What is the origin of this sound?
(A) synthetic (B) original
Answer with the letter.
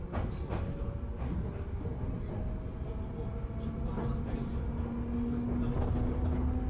B